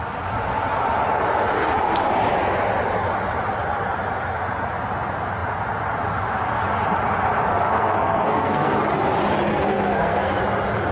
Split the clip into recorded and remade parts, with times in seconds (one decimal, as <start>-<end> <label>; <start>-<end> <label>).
0.0-7.5 recorded; 7.5-8.8 remade; 8.8-9.5 recorded; 9.5-10.4 remade; 10.4-10.9 recorded